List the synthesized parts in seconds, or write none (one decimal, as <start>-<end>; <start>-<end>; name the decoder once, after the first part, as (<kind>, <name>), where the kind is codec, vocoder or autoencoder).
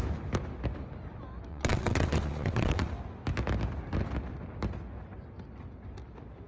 1.5-2.9 (vocoder, WaveNeXt)